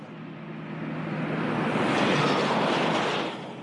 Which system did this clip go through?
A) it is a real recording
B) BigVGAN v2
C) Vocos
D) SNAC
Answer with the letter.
A